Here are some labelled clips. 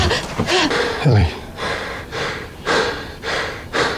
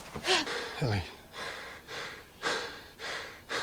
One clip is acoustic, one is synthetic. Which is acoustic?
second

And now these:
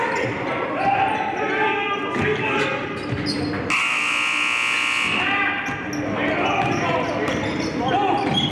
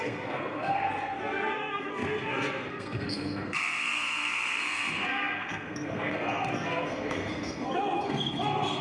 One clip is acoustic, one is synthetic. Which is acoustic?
first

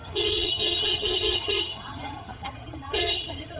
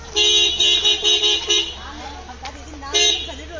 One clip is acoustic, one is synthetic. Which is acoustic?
second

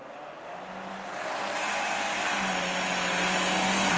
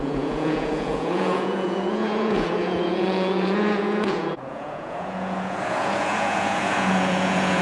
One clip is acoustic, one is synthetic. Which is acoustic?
first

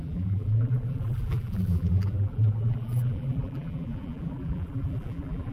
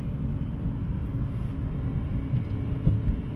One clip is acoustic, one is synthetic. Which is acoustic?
second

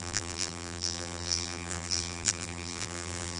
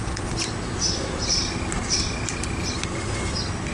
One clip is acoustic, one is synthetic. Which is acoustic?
second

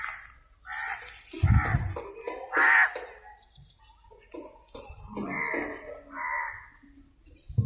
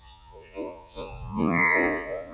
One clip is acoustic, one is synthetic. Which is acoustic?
first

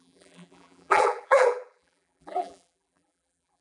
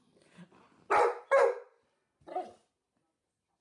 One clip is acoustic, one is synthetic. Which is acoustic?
second